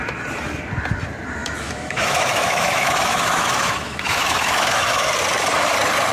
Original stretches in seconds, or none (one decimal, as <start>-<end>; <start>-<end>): 0.0-1.4; 5.1-6.1